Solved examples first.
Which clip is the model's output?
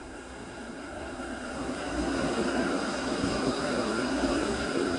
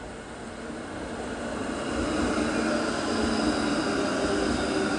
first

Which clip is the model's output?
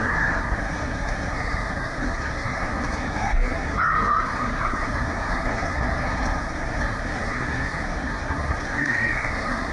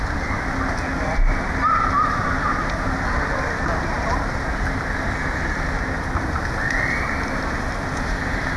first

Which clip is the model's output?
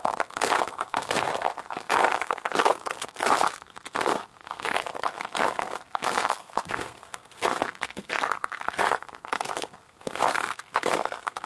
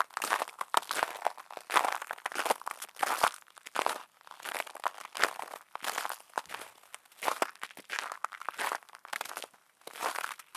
first